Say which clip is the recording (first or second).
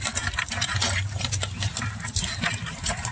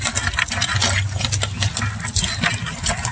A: second